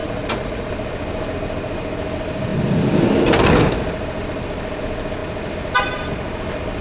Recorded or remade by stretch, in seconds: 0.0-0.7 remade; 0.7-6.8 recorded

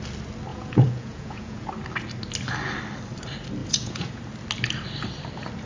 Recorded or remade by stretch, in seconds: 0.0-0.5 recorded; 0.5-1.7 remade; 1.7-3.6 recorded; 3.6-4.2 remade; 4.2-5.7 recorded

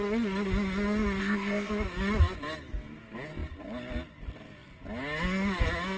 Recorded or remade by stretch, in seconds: 0.0-1.2 recorded; 1.2-1.7 remade; 1.7-6.0 recorded

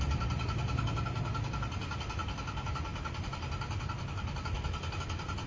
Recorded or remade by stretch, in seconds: 0.0-5.5 recorded